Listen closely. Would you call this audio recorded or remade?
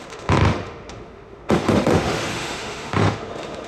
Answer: remade